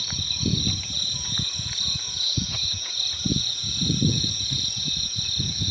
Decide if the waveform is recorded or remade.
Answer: remade